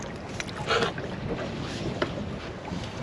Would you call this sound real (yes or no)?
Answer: yes